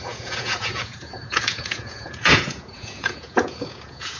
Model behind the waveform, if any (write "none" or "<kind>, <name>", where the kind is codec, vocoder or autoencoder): vocoder, Vocos